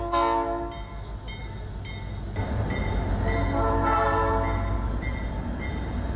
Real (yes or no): yes